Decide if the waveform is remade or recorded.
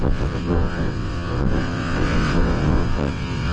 remade